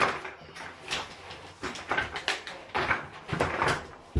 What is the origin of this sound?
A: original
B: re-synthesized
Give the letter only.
B